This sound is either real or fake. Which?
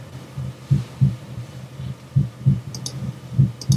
real